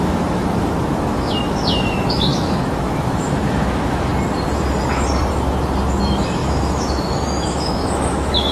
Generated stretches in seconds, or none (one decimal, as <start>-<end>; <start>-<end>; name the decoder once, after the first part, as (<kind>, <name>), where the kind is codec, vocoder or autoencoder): 0.0-4.1 (autoencoder, DAC-VAE); 6.0-8.5